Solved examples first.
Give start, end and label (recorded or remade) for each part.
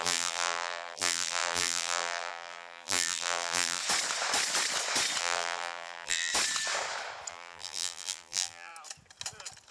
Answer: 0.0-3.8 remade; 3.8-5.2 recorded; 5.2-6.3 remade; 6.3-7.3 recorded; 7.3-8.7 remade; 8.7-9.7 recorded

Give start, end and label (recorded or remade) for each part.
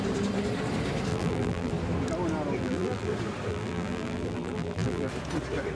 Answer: 0.0-1.1 recorded; 1.1-1.7 remade; 1.7-2.6 recorded; 2.6-3.1 remade; 3.1-3.5 recorded; 3.5-5.1 remade; 5.1-5.7 recorded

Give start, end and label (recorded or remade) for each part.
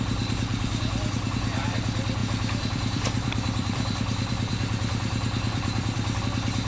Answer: 0.0-2.2 recorded; 2.2-6.2 remade; 6.2-6.7 recorded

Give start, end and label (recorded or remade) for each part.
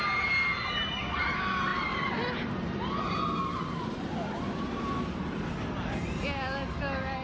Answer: 0.0-7.2 recorded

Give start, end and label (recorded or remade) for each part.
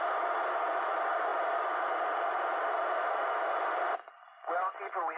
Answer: 0.0-5.2 recorded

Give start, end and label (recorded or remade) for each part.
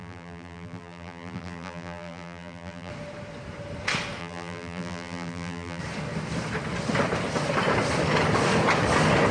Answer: 0.0-2.9 remade; 2.9-4.2 recorded; 4.2-5.8 remade; 5.8-9.3 recorded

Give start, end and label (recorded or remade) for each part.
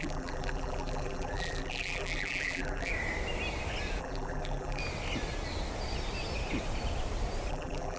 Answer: 0.0-2.9 remade; 2.9-4.0 recorded; 4.0-4.8 remade; 4.8-7.5 recorded; 7.5-8.0 remade